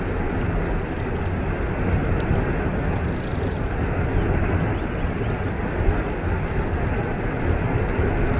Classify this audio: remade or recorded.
recorded